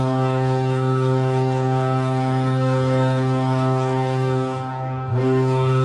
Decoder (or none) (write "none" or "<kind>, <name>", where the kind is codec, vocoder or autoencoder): codec, DAC